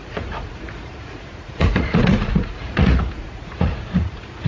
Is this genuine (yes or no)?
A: no